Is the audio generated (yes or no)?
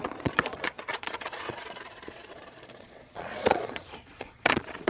yes